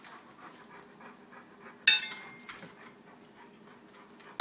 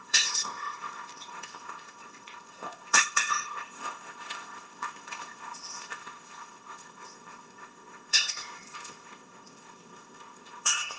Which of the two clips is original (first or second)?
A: first